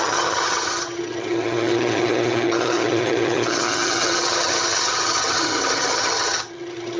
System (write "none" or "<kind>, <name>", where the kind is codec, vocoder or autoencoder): vocoder, HiFi-GAN